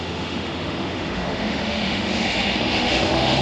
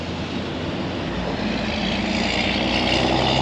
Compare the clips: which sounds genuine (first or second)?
second